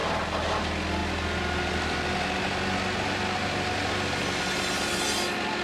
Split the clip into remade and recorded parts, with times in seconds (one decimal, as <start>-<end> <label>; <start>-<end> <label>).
0.0-5.6 recorded